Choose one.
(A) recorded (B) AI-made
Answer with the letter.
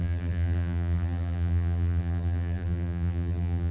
B